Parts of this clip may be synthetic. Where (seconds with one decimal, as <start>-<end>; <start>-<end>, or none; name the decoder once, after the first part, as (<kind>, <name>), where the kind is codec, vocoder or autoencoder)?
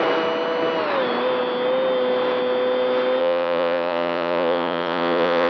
3.2-5.5 (vocoder, Vocos)